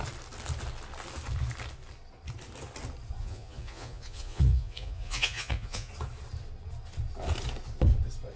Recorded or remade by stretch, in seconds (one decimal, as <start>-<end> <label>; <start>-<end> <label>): 0.0-3.2 recorded; 3.2-5.9 remade; 5.9-8.4 recorded